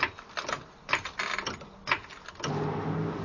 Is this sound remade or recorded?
recorded